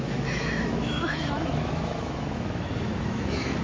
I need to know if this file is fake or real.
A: fake